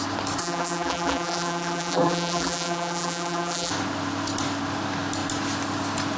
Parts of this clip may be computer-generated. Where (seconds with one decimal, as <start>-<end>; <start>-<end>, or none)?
0.4-3.7